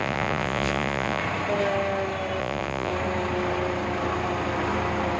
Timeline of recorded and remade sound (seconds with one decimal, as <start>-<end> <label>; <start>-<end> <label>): 0.0-1.2 remade; 1.2-2.4 recorded; 2.4-2.9 remade; 2.9-5.2 recorded